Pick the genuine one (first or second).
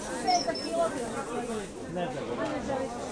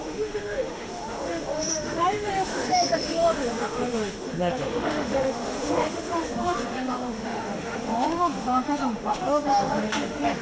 first